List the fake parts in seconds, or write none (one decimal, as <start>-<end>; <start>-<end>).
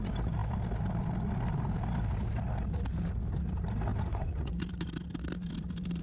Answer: 3.9-4.6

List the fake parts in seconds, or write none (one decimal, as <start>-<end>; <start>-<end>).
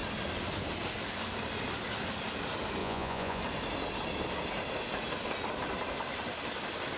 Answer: 2.8-3.4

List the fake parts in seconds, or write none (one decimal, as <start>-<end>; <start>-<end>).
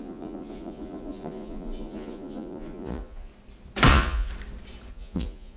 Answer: 0.0-3.3; 3.9-4.3; 4.9-5.6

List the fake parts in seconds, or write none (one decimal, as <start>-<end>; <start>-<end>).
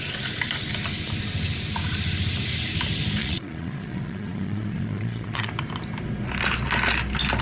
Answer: 3.2-5.5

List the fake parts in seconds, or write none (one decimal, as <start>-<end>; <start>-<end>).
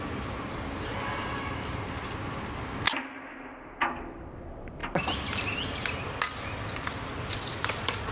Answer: none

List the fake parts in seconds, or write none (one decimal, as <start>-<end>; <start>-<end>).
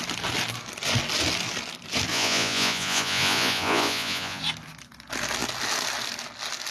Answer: 2.1-4.4